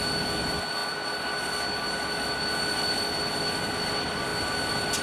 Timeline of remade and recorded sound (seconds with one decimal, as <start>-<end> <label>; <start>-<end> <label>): 0.0-5.0 recorded